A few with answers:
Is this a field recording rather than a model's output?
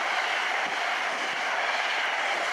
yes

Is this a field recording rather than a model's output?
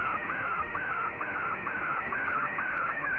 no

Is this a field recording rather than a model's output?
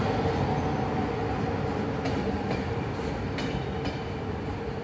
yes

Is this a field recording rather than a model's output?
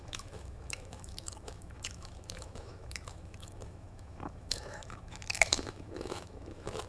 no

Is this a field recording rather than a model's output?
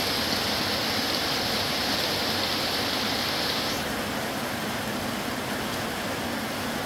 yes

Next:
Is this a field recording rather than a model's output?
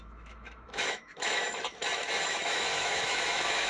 no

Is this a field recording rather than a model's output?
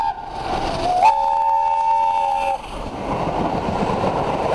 yes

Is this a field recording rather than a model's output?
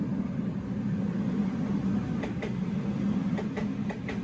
yes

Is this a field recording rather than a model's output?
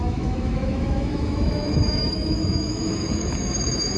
no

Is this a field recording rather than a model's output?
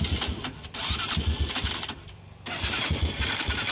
yes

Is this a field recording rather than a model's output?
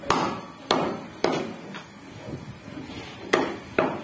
yes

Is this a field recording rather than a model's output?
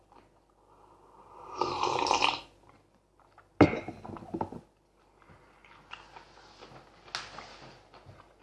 yes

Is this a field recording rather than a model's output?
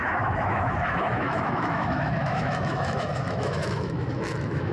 no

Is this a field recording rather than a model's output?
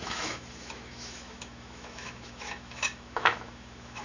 no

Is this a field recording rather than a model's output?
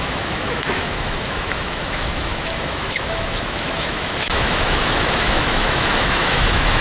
no